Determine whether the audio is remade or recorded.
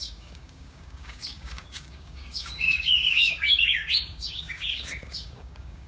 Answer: remade